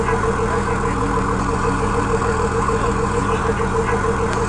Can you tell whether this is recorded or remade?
remade